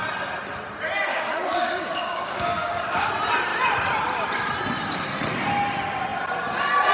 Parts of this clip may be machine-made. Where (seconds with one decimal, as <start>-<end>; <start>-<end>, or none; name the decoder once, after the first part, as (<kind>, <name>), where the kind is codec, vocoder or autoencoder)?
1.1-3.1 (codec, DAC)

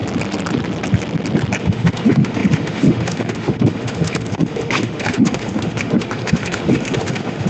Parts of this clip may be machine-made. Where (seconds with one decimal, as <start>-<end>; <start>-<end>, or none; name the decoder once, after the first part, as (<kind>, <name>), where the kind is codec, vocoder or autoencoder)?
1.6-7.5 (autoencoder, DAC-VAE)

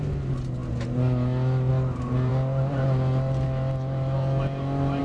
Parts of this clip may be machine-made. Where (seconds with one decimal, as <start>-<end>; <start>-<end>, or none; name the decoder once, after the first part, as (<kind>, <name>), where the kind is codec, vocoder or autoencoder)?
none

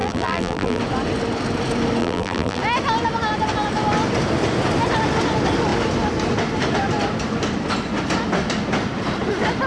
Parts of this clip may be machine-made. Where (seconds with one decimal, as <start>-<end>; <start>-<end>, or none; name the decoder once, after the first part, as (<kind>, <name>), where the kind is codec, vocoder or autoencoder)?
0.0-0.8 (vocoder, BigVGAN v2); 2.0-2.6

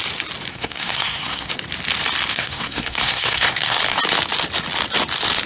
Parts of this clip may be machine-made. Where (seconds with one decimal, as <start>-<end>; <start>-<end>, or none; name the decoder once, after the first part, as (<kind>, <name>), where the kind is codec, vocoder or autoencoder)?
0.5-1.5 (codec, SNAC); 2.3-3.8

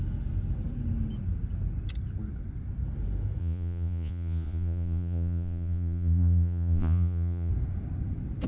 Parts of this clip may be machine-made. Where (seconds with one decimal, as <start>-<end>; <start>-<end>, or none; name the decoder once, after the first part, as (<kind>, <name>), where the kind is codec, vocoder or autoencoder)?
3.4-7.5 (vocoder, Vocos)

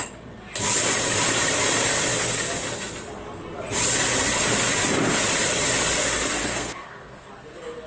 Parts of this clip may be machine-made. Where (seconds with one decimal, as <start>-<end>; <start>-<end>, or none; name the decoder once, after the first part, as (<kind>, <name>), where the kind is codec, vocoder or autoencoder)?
6.4-7.3 (codec, SNAC)

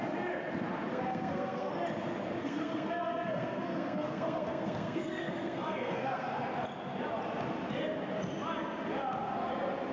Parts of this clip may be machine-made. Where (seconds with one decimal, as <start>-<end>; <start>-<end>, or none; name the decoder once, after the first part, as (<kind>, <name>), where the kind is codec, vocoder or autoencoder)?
0.9-1.7 (codec, SNAC); 2.4-6.4